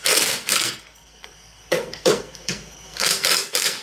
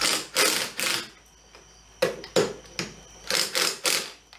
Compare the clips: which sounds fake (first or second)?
first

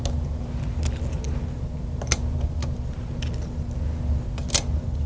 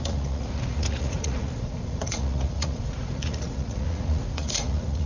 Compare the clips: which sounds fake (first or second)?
second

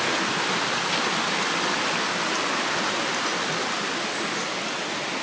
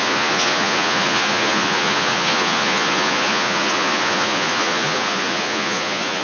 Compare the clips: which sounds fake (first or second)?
second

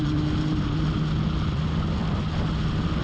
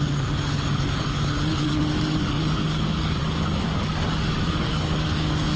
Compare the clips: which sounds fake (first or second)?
second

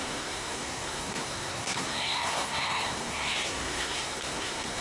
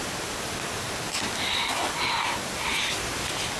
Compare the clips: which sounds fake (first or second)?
first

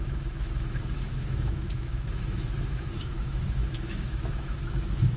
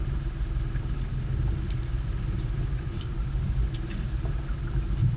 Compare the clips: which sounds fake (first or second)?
first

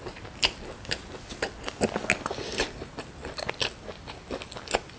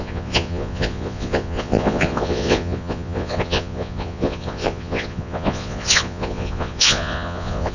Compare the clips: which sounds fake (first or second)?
second